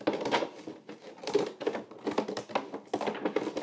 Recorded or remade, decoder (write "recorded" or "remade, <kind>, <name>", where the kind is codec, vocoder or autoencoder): recorded